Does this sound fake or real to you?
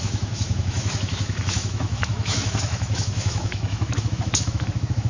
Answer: fake